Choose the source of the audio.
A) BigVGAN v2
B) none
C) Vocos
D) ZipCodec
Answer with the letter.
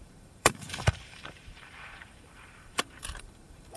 A